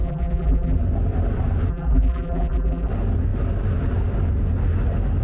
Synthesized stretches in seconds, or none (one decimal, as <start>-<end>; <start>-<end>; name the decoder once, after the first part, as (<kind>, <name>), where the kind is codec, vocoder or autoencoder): 0.0-0.8 (vocoder, BigVGAN v2); 1.7-2.9